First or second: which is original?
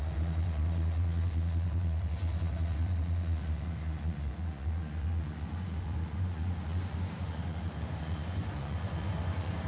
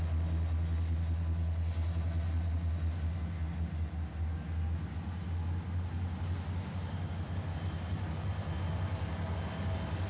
second